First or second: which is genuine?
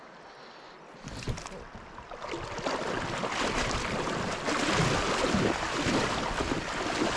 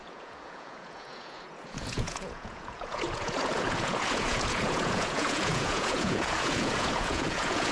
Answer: first